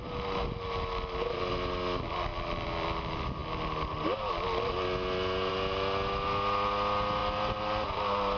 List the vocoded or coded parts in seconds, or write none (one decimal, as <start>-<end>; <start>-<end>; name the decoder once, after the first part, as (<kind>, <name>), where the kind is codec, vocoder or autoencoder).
2.3-3.0 (vocoder, BigVGAN v2)